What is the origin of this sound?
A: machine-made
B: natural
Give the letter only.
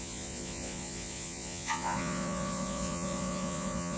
A